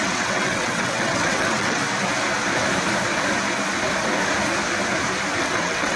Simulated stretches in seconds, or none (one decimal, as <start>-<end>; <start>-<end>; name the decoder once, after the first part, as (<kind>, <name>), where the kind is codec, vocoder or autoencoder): 0.0-1.8 (vocoder, WaveNeXt); 5.4-6.0